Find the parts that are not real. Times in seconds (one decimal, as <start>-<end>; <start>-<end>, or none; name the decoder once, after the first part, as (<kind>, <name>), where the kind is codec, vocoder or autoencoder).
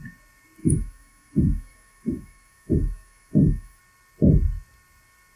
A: 0.6-3.8 (autoencoder, DAC-VAE)